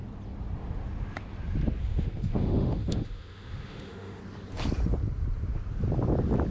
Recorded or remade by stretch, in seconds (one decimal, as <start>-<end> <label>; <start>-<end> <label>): 0.0-1.8 recorded; 1.8-4.2 remade; 4.2-6.5 recorded